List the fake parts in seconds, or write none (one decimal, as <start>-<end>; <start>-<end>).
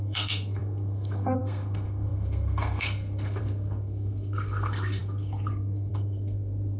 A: 0.0-6.8